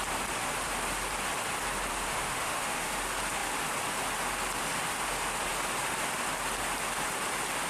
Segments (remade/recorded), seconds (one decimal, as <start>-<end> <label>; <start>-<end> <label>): 0.0-1.9 recorded; 1.9-2.9 remade; 2.9-7.7 recorded